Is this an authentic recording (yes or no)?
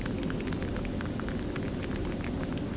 yes